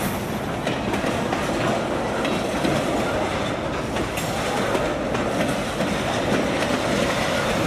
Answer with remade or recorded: recorded